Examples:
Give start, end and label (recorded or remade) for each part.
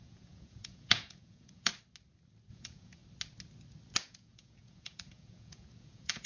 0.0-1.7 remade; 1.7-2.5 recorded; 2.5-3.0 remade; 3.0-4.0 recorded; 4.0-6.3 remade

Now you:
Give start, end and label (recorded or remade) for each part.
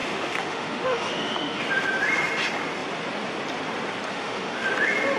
0.0-1.6 remade; 1.6-4.1 recorded; 4.1-4.7 remade; 4.7-5.2 recorded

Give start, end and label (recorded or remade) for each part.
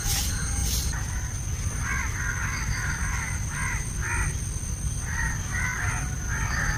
0.0-6.8 recorded